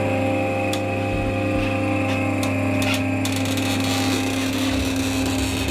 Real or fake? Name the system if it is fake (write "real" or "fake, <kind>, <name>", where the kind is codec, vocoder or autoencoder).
real